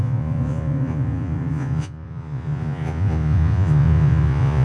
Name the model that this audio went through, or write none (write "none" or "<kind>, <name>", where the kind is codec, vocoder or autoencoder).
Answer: vocoder, Vocos